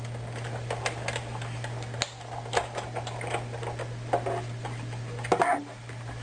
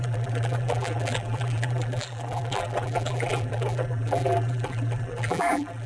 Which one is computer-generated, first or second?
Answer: second